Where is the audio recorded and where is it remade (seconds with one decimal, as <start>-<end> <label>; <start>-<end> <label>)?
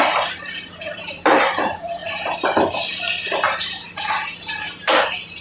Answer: 0.0-5.4 remade